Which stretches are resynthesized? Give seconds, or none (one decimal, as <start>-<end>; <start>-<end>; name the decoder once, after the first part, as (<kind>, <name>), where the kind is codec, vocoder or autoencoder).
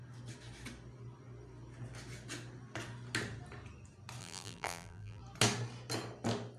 4.2-5.2 (vocoder, BigVGAN v2)